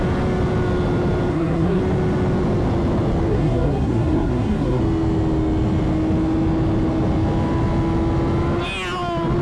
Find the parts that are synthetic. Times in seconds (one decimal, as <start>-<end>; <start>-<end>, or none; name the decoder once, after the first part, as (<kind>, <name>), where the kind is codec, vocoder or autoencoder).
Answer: 1.3-1.8 (codec, SNAC); 3.3-4.8